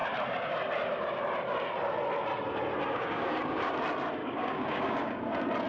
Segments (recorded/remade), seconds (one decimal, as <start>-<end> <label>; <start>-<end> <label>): 0.0-2.9 recorded; 2.9-3.7 remade; 3.7-4.2 recorded; 4.2-5.2 remade; 5.2-5.7 recorded